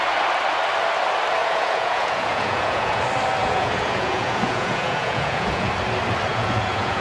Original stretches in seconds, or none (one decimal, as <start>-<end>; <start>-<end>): 0.0-1.4; 3.0-3.4; 5.7-6.3